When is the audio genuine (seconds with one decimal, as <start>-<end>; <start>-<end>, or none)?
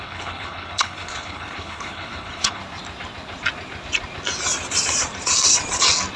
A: 2.6-6.2